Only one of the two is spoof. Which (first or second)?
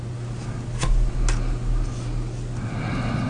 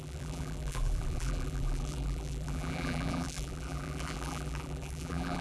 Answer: second